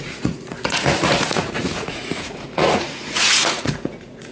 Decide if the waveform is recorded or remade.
remade